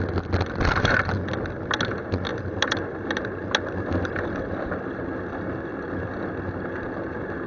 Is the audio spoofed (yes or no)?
no